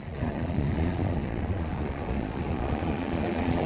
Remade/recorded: remade